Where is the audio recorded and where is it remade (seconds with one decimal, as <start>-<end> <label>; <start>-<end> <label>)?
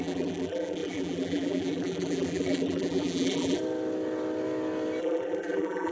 0.0-3.6 remade; 3.6-5.0 recorded; 5.0-5.9 remade